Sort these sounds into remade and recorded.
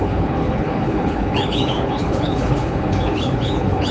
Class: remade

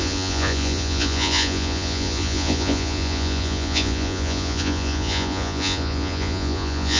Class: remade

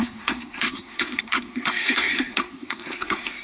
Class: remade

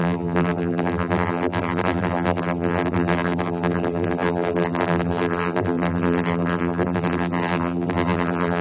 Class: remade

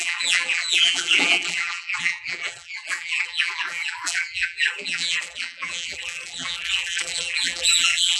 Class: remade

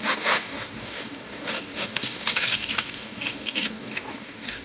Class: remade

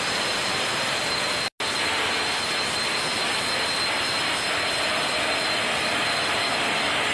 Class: recorded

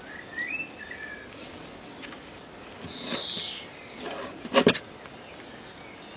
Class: recorded